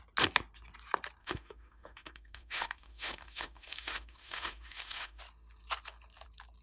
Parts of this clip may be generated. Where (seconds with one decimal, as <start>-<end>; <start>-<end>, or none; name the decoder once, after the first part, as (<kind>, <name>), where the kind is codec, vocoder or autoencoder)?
1.2-5.2 (autoencoder, DAC-VAE)